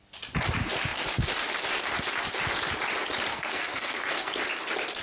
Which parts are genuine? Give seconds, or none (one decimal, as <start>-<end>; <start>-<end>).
0.0-3.3; 4.4-5.0